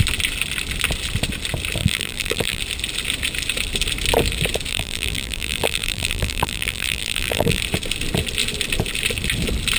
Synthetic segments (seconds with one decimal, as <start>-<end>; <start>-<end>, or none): 1.8-2.6; 4.7-7.6